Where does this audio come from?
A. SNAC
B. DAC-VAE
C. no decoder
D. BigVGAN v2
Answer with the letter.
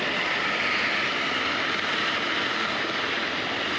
C